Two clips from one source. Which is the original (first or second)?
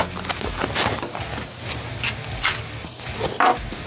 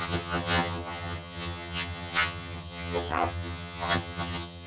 first